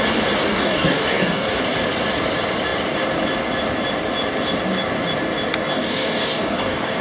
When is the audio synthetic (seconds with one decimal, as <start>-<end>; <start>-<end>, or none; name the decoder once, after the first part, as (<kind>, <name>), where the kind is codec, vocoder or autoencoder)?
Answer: 0.5-1.6 (codec, DAC); 5.7-7.0

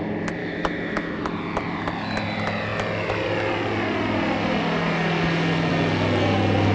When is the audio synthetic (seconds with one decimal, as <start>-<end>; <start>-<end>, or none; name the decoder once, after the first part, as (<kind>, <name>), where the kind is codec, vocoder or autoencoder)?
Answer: 0.4-1.2 (autoencoder, DAC-VAE)

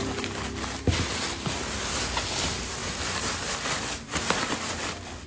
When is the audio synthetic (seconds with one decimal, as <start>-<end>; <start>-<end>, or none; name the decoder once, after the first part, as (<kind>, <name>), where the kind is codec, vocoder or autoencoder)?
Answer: none

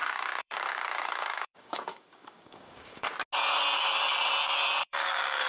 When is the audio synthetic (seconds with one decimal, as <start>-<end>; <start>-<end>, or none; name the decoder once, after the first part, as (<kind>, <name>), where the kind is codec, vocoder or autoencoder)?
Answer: 0.0-3.1 (codec, DAC); 4.8-5.5